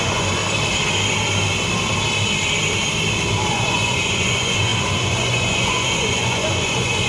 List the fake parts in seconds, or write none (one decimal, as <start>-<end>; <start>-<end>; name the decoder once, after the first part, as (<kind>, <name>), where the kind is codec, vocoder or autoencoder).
0.0-0.4 (vocoder, Vocos); 3.5-7.1